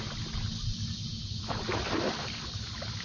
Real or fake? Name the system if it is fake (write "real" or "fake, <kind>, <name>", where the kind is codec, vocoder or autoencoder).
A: real